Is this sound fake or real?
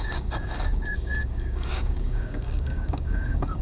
fake